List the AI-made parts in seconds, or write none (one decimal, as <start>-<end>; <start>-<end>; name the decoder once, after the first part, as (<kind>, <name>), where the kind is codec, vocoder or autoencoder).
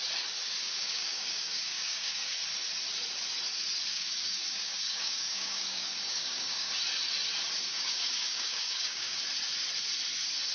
0.6-2.3 (codec, DAC); 3.9-6.7; 7.7-9.2